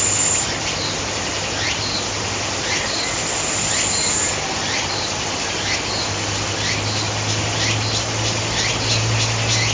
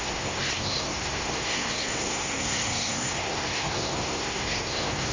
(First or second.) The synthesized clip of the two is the second